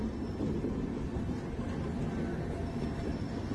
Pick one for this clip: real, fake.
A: real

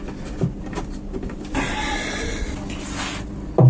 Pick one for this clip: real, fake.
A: real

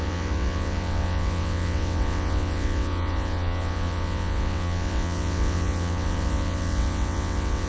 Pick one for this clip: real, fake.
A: fake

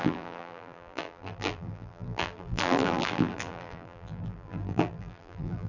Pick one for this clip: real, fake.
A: fake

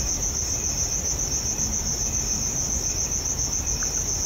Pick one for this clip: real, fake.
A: real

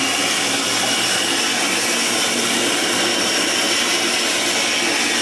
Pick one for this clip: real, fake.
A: real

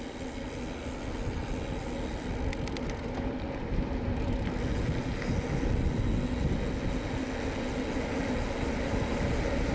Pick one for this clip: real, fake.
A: real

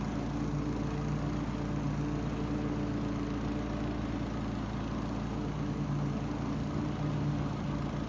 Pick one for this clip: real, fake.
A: real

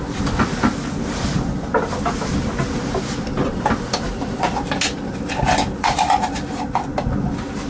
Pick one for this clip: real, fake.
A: real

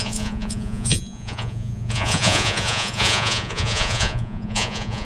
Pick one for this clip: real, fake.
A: fake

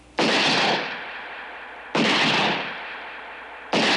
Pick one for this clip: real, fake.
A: real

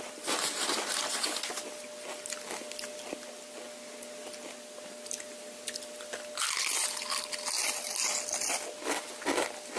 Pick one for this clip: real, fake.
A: real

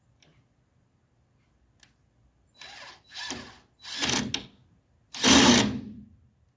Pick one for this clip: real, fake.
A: real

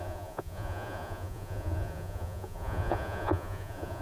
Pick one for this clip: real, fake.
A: fake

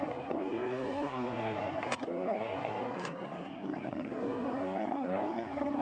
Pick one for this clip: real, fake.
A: fake